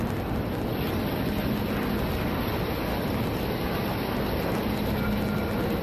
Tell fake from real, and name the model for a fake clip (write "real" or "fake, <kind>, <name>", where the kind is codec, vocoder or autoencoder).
real